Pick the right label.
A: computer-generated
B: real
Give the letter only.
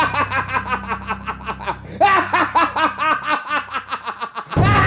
B